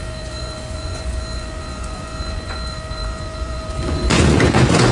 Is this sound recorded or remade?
remade